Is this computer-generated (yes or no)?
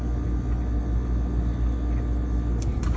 no